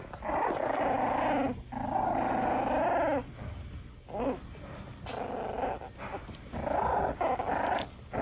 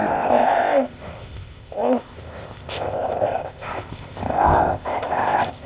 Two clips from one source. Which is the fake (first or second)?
second